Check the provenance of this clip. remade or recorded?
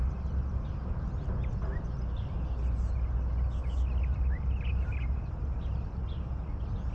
recorded